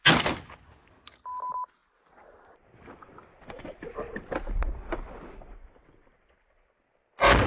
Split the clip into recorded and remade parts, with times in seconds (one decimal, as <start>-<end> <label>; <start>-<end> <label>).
0.0-7.5 recorded